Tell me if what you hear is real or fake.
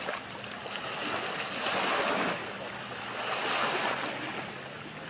real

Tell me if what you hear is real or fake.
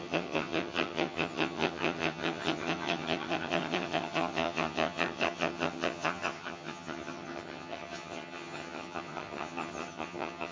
fake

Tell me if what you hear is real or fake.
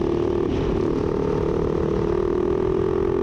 real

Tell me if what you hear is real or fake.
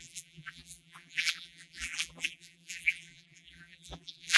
fake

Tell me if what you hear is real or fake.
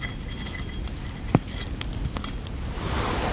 real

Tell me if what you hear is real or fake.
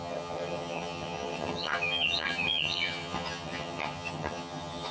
fake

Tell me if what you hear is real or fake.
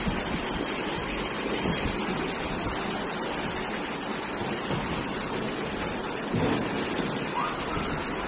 real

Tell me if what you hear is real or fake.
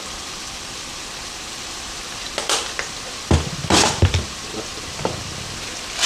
fake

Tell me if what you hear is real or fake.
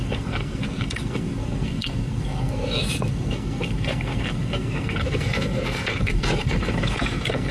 fake